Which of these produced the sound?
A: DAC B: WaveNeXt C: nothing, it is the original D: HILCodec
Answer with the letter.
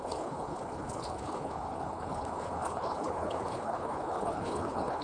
D